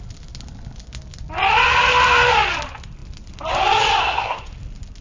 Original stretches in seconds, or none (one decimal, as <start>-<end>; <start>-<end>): 0.0-4.0; 4.5-5.0